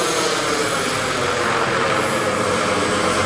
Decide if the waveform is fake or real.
real